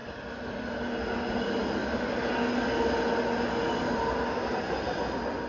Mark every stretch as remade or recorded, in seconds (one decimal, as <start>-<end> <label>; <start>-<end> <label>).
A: 0.0-5.5 recorded